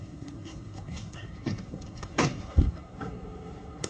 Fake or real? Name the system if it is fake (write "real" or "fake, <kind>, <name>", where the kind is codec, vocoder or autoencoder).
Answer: fake, codec, SNAC